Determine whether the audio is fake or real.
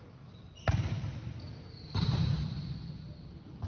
real